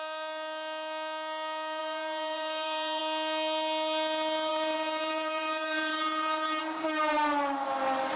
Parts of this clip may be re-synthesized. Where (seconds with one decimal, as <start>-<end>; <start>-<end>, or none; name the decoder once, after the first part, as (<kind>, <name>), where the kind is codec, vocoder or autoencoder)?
1.8-3.0 (vocoder, BigVGAN v2); 4.5-6.6